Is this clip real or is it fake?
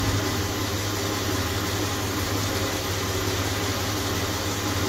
real